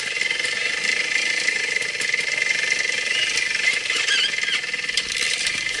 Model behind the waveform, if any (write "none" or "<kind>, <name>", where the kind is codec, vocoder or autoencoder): vocoder, BigVGAN v2